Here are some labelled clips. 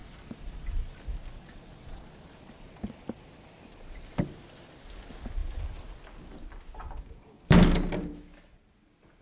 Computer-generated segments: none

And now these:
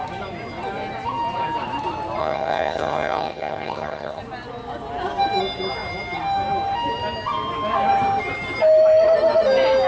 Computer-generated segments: 2.2-4.2 (vocoder, HiFi-GAN)